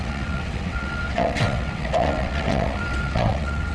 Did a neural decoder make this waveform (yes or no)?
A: yes